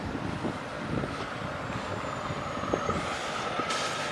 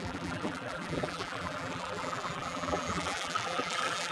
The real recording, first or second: first